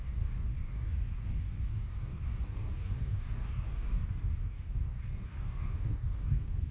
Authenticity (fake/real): fake